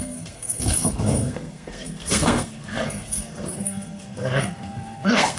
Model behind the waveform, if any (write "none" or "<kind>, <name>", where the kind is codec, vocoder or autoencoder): codec, SNAC